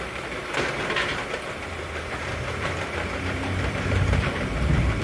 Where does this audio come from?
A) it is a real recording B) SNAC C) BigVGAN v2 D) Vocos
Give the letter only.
C